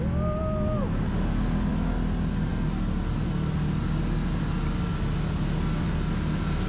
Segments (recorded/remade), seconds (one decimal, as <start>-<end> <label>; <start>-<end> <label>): 0.0-6.7 recorded